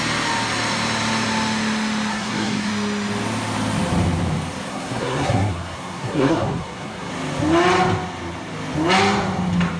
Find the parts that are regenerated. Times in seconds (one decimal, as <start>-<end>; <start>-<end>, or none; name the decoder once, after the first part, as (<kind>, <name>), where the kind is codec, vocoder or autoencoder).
2.1-2.7 (codec, SNAC); 4.7-7.1